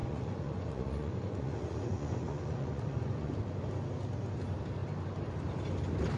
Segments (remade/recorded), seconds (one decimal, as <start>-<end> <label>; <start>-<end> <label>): 0.0-3.3 remade; 3.3-6.2 recorded

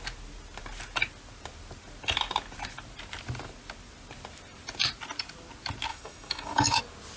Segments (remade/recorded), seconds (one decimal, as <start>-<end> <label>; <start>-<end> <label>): 0.0-5.9 recorded; 5.9-6.8 remade; 6.8-7.2 recorded

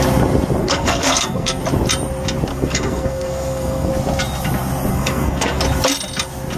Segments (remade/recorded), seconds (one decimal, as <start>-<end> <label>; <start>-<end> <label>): 0.0-0.6 recorded; 0.6-1.6 remade; 1.6-2.5 recorded; 2.5-3.9 remade; 3.9-4.9 recorded; 4.9-5.6 remade; 5.6-6.6 recorded

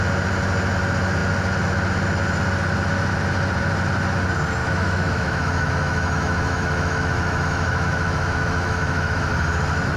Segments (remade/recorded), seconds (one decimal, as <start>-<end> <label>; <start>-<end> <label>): 0.0-4.6 recorded; 4.6-9.3 remade; 9.3-10.0 recorded

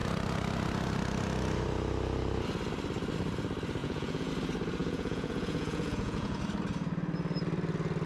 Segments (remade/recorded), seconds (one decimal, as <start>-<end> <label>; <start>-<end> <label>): 0.0-3.8 recorded; 3.8-4.3 remade; 4.3-4.8 recorded; 4.8-6.4 remade; 6.4-8.1 recorded

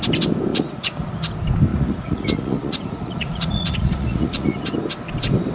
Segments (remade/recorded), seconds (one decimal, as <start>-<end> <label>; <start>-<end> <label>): 0.0-0.5 recorded; 0.5-1.1 remade; 1.1-1.7 recorded; 1.7-4.6 remade; 4.6-5.5 recorded

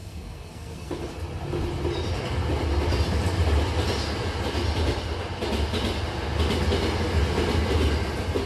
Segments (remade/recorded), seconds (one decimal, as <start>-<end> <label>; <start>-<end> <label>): 0.0-1.1 remade; 1.1-8.5 recorded

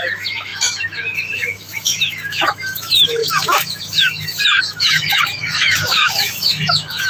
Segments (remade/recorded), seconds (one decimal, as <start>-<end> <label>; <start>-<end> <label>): 0.0-7.1 remade